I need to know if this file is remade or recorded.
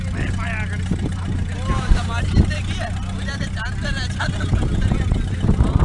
recorded